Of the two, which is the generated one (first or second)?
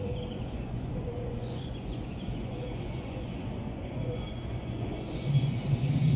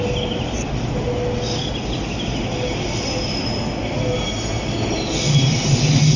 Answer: first